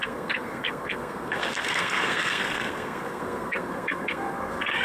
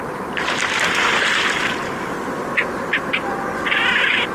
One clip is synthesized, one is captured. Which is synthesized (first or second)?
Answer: first